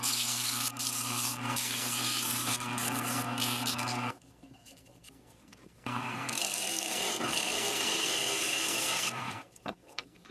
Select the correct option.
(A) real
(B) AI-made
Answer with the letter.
B